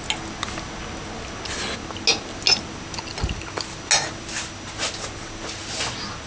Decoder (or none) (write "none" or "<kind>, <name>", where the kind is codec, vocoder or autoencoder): none